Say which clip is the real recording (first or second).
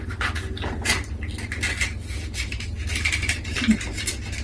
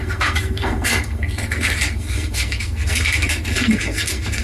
first